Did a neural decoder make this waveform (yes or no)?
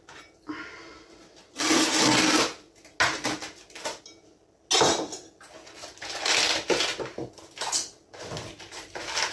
no